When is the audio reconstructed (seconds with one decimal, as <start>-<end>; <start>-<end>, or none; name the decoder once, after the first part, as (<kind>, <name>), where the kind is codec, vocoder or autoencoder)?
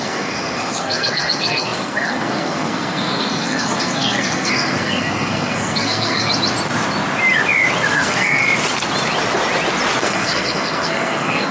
0.0-6.3 (codec, SNAC); 7.9-8.4; 10.0-11.5